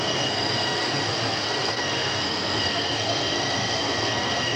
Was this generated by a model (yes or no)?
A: yes